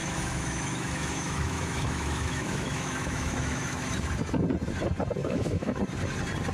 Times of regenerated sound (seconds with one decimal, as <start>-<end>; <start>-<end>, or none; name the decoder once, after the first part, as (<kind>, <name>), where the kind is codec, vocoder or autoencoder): 0.0-3.9 (autoencoder, DAC-VAE); 5.2-5.8